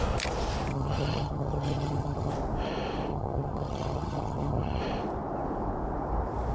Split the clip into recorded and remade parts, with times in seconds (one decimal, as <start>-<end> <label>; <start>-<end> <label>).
0.0-0.7 recorded; 0.7-2.3 remade; 2.3-3.1 recorded; 3.1-4.8 remade; 4.8-6.5 recorded